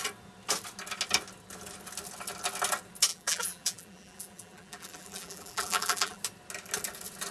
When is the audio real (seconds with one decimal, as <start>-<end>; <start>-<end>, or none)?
0.0-3.1; 6.2-7.3